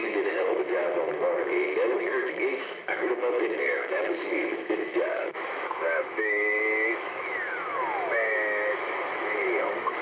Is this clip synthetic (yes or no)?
yes